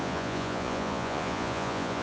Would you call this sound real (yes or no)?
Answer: no